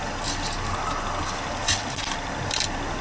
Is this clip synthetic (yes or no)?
no